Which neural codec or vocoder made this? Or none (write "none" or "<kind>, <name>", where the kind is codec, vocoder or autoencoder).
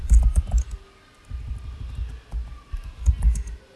none